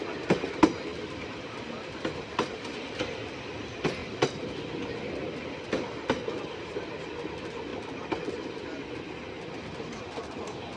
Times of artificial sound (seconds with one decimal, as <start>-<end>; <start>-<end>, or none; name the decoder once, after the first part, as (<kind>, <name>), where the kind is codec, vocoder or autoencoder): none